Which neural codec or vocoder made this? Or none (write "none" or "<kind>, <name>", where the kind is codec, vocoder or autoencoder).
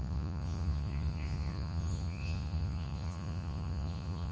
vocoder, Vocos